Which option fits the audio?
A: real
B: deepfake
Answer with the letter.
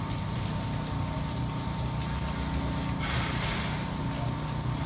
A